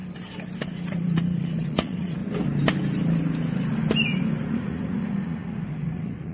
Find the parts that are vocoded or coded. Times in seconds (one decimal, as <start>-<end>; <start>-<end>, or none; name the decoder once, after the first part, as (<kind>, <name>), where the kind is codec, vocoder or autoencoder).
0.7-2.2 (vocoder, Vocos); 4.5-6.3